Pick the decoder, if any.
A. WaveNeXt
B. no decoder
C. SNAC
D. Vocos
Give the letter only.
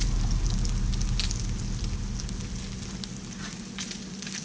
B